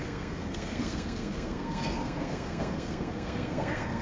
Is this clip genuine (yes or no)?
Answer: no